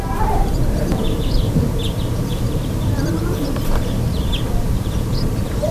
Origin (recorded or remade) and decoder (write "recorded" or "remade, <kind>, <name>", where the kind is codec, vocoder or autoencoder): remade, vocoder, BigVGAN v2